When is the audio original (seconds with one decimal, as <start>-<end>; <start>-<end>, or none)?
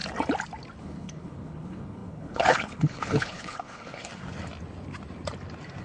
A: 0.0-0.8; 4.1-5.8